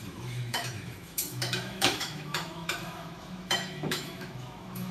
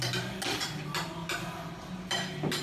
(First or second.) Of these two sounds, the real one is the second